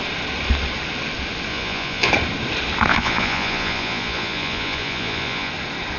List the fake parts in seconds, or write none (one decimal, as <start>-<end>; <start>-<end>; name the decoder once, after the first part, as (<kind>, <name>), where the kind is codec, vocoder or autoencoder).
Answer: 1.5-2.1 (vocoder, Vocos); 2.9-5.5